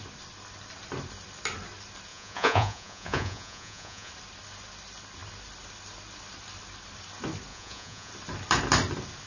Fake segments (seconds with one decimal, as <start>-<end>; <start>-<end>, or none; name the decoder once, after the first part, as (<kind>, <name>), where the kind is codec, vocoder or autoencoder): 2.1-4.1 (vocoder, Vocos); 7.5-8.1